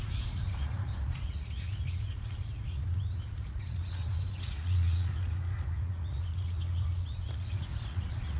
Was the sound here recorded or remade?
remade